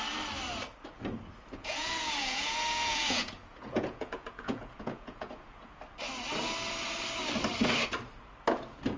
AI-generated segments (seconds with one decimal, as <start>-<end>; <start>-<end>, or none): 1.6-5.8